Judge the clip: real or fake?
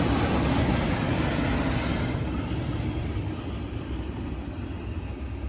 real